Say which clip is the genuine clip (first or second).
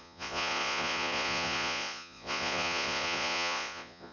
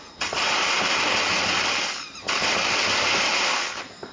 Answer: second